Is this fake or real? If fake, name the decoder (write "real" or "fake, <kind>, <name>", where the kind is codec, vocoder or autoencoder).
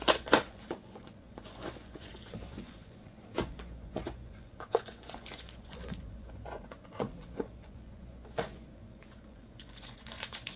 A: fake, vocoder, Vocos